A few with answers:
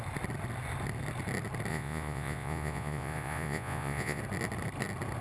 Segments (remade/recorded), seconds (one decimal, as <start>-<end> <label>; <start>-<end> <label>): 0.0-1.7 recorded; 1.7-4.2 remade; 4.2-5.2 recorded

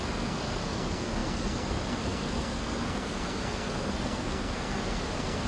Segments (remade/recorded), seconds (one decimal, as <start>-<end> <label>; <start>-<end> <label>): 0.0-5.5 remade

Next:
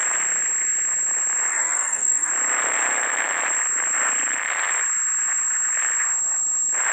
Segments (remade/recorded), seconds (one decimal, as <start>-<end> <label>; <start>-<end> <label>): 0.0-1.5 recorded; 1.5-2.3 remade; 2.3-6.9 recorded